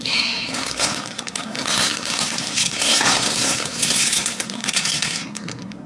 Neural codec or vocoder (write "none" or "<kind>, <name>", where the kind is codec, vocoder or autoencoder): codec, SNAC